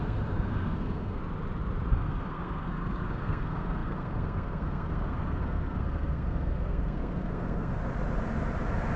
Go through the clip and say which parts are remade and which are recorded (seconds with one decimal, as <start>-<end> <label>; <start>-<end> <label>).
0.0-1.2 remade; 1.2-1.9 recorded; 1.9-7.8 remade; 7.8-9.0 recorded